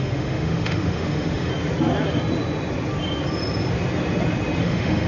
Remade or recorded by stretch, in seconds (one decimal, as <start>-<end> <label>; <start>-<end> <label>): 0.0-1.5 remade; 1.5-4.6 recorded; 4.6-5.1 remade